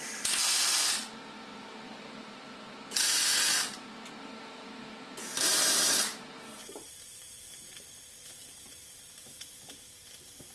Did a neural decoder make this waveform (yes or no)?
yes